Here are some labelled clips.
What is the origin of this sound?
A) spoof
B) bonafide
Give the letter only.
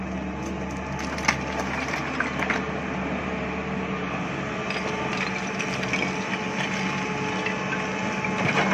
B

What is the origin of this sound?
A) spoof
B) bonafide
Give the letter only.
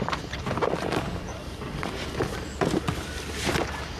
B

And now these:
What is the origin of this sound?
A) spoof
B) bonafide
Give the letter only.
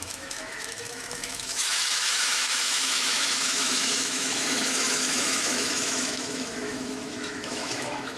A